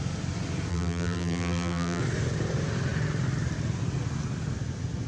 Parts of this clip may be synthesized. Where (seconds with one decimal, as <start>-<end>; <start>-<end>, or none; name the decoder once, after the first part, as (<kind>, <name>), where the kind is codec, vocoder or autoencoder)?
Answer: 0.7-2.0 (vocoder, BigVGAN v2)